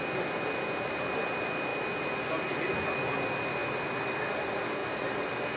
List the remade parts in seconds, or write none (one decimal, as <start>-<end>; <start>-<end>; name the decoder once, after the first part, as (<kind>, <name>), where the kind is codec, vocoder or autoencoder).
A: none